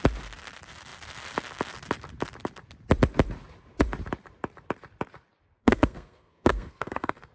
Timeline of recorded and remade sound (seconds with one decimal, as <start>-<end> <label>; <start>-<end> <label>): 0.0-5.6 recorded; 5.6-7.3 remade